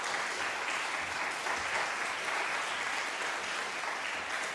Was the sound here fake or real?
real